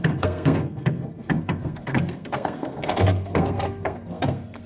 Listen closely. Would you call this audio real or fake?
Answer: fake